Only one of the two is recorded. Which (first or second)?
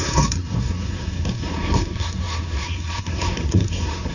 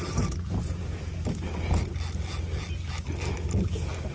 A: second